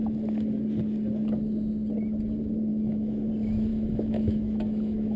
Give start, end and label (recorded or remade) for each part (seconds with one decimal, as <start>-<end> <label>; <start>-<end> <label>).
0.0-2.7 recorded; 2.7-3.3 remade; 3.3-3.7 recorded; 3.7-5.2 remade